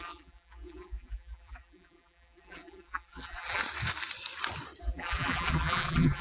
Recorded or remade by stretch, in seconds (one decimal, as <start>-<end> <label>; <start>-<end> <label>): 0.0-3.6 remade; 3.6-4.8 recorded; 4.8-6.2 remade